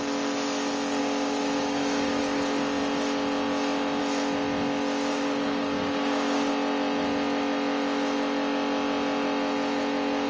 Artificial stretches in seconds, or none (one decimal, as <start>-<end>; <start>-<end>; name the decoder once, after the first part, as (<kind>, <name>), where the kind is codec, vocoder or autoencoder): 1.0-2.2 (codec, DAC); 5.1-6.5